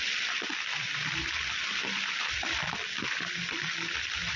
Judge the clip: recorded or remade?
recorded